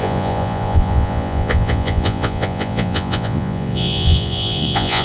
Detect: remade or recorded remade